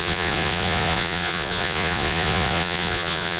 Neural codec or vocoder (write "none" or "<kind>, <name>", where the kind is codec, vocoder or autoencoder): vocoder, Vocos